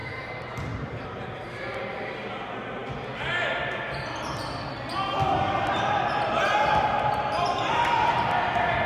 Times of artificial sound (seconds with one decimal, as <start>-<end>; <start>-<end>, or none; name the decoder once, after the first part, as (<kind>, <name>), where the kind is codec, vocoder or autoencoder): 0.0-2.3 (vocoder, BigVGAN v2)